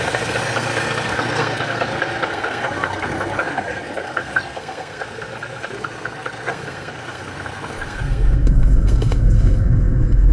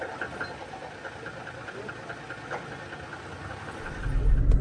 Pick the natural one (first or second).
second